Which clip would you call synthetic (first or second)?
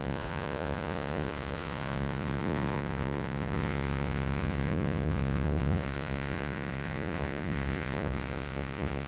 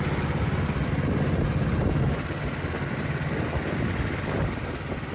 first